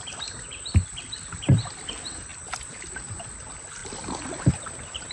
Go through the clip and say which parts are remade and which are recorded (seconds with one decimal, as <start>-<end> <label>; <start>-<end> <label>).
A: 0.0-2.3 remade; 2.3-3.1 recorded; 3.1-5.1 remade